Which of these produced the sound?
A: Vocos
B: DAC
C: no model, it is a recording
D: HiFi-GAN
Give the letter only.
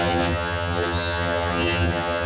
D